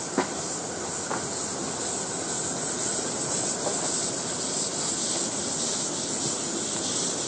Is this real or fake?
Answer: real